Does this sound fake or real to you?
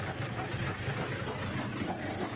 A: real